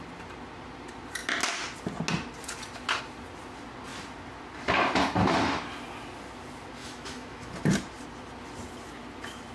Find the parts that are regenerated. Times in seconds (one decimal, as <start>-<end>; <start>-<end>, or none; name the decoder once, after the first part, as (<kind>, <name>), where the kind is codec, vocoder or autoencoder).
6.8-7.5 (autoencoder, DAC-VAE)